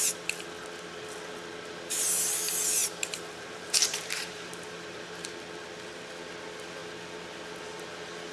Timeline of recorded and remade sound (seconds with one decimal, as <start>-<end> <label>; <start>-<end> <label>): 0.0-2.8 recorded; 2.8-5.3 remade; 5.3-8.3 recorded